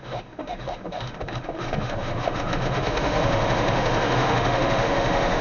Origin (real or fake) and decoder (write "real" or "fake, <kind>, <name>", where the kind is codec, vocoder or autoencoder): fake, autoencoder, DAC-VAE